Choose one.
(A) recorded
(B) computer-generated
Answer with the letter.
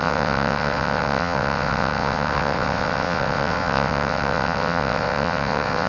B